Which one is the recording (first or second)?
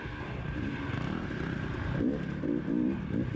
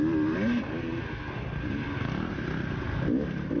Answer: second